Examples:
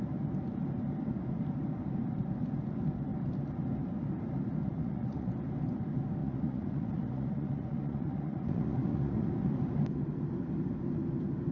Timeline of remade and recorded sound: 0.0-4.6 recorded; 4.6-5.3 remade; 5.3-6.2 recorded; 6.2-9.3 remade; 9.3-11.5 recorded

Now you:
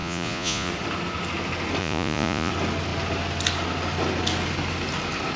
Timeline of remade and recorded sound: 0.0-0.7 remade; 0.7-1.8 recorded; 1.8-2.5 remade; 2.5-5.4 recorded

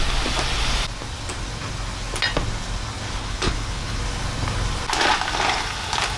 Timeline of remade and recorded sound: 0.0-3.2 recorded; 3.2-4.0 remade; 4.0-6.2 recorded

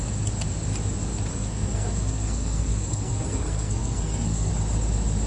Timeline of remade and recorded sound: 0.0-1.3 recorded; 1.3-4.5 remade; 4.5-5.3 recorded

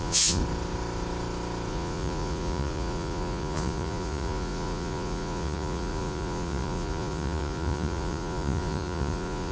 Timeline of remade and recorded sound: 0.0-0.4 remade; 0.4-1.7 recorded; 1.7-9.5 remade

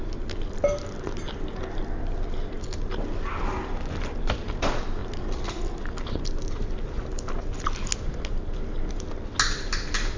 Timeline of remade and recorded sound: 0.0-10.2 recorded

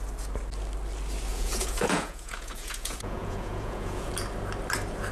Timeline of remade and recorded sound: 0.0-1.3 recorded; 1.3-4.1 remade; 4.1-5.1 recorded